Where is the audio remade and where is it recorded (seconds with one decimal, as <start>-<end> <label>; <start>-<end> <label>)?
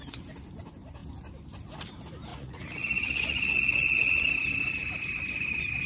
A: 0.0-2.3 recorded; 2.3-4.3 remade; 4.3-5.9 recorded